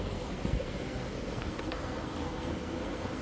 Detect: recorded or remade remade